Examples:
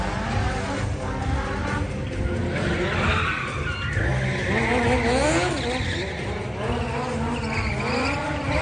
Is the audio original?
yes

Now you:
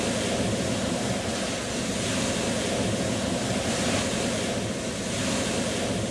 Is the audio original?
yes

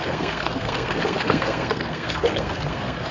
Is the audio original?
no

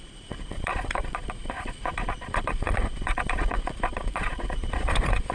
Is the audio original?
no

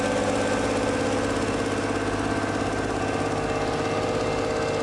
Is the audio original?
yes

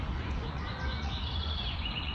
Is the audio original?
no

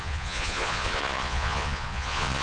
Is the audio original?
no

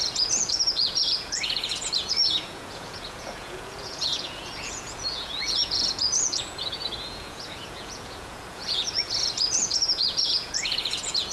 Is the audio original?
no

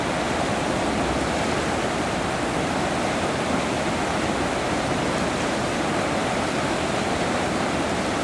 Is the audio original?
no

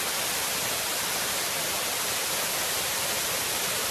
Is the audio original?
yes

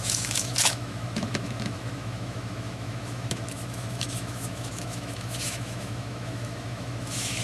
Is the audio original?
no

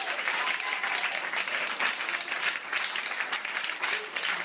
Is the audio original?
yes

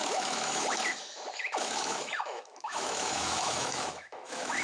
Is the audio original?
no